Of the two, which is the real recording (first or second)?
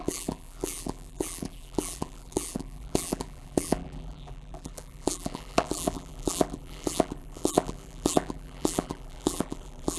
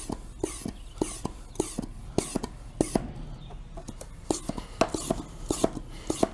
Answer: second